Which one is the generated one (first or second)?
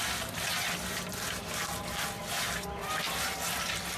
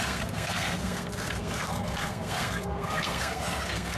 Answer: second